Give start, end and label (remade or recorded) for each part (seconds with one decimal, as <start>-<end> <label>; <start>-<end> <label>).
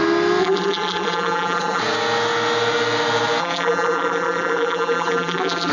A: 0.0-0.4 recorded; 0.4-1.8 remade; 1.8-3.4 recorded; 3.4-5.7 remade